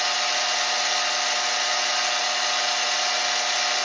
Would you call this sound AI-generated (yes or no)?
no